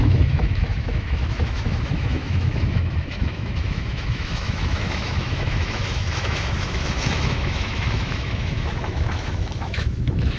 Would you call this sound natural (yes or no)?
no